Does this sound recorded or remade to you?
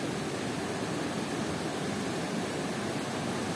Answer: recorded